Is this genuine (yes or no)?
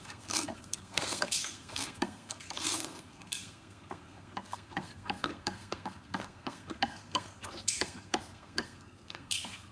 no